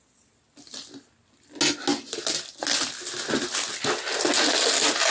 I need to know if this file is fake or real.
real